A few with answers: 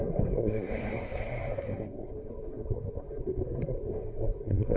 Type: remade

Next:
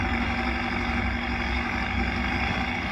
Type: remade